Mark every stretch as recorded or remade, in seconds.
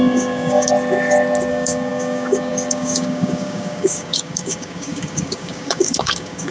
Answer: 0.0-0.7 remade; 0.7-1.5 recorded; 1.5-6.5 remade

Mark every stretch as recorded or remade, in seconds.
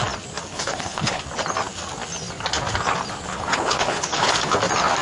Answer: 0.0-0.5 recorded; 0.5-1.2 remade; 1.2-3.3 recorded; 3.3-4.3 remade; 4.3-5.0 recorded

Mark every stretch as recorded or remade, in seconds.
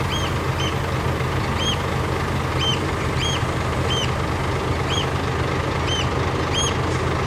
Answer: 0.0-2.7 recorded; 2.7-4.1 remade; 4.1-7.3 recorded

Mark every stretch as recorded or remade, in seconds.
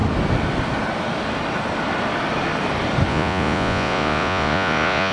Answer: 0.0-3.1 recorded; 3.1-5.1 remade